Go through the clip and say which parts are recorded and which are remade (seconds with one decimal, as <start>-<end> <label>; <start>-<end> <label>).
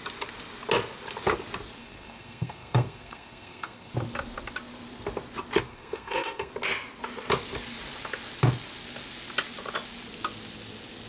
0.0-1.8 recorded; 1.8-3.9 remade; 3.9-5.7 recorded; 5.7-6.5 remade; 6.5-11.1 recorded